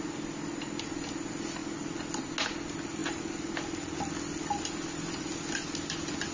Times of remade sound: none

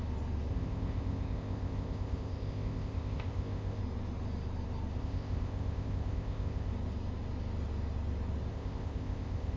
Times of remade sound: 0.5-3.8; 5.0-6.7; 8.5-9.6